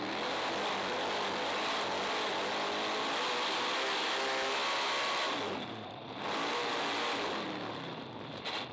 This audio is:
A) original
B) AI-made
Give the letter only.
A